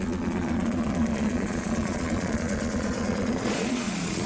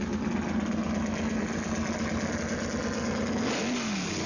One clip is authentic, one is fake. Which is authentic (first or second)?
second